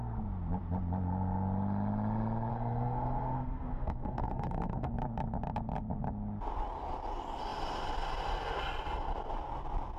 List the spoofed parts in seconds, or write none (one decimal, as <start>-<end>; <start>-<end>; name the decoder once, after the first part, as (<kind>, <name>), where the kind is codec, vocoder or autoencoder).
2.5-4.9 (codec, SNAC)